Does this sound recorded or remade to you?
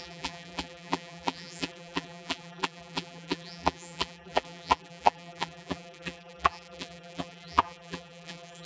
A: remade